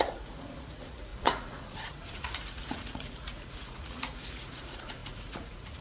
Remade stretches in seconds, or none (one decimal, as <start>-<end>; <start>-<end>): 0.0-5.8